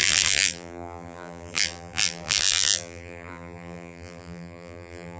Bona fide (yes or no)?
no